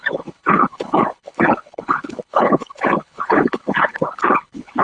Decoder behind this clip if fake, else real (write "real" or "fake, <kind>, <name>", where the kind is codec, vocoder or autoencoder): fake, codec, HILCodec